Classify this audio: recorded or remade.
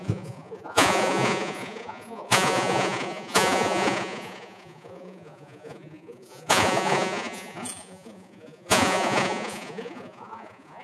remade